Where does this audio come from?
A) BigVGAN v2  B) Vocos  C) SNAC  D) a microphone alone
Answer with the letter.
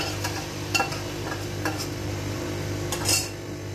D